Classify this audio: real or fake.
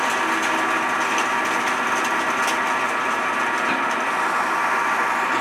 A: real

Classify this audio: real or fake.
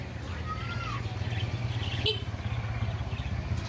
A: real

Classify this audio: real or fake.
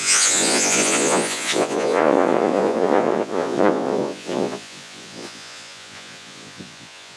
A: fake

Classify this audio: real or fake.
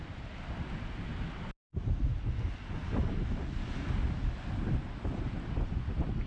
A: real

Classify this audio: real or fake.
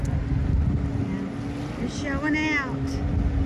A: real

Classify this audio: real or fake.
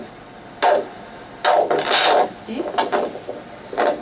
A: real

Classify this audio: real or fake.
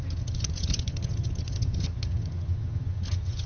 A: fake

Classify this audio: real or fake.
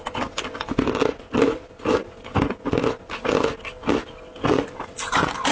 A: real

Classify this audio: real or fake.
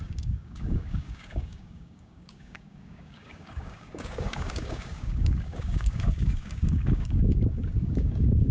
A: fake